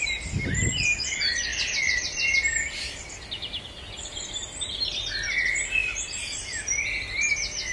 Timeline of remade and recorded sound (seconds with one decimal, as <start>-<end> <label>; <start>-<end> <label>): 0.0-1.5 recorded; 1.5-5.1 remade; 5.1-5.8 recorded; 5.8-6.6 remade; 6.6-7.7 recorded